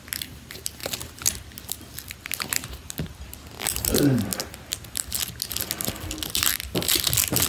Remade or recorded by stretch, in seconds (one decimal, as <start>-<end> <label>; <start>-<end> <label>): 0.0-7.5 recorded